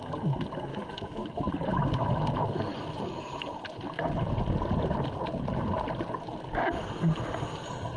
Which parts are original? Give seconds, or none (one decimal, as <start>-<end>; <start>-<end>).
0.0-0.7; 1.5-8.0

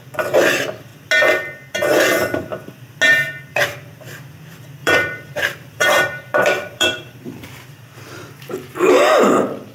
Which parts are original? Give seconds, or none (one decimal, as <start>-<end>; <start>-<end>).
0.0-4.8; 8.9-9.7

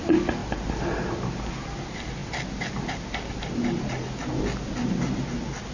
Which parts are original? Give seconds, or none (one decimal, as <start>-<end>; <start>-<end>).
0.0-0.4; 1.4-5.7

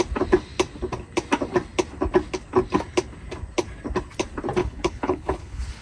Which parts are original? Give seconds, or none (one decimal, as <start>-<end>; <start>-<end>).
0.0-4.6

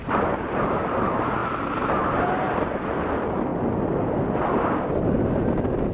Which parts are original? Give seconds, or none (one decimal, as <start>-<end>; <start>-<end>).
1.4-3.0; 3.5-5.0

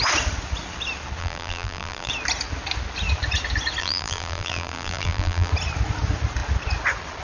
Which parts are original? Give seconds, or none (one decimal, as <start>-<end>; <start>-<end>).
0.0-1.2; 2.1-3.8; 5.5-7.2

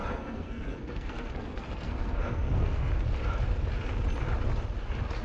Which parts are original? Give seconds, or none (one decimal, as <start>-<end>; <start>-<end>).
2.9-5.2